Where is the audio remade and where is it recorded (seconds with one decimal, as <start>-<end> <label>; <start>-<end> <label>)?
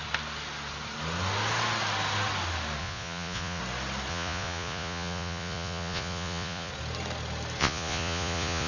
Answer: 0.0-2.8 recorded; 2.8-3.6 remade; 3.6-4.1 recorded; 4.1-6.7 remade; 6.7-7.6 recorded; 7.6-8.7 remade